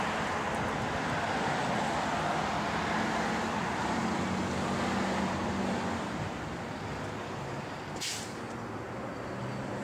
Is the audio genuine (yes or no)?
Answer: yes